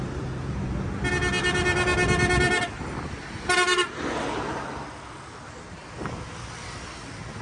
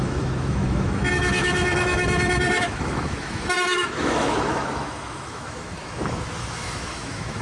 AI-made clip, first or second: second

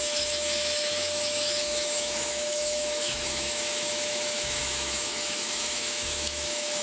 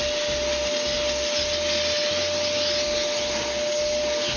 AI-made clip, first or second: first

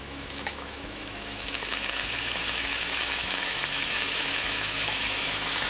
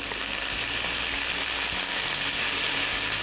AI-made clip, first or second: first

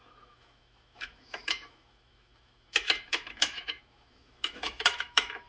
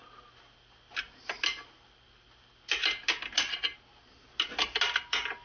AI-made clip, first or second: first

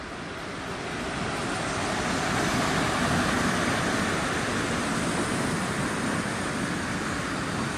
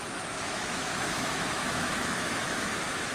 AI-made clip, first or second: second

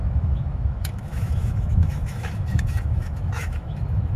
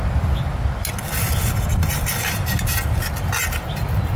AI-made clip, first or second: first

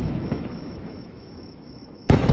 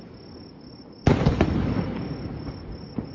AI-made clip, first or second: first